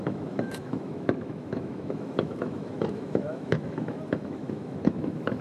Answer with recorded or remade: remade